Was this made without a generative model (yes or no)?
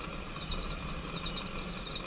yes